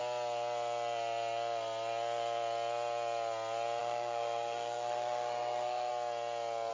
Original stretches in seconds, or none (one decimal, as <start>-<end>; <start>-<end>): 0.0-3.8; 5.9-6.7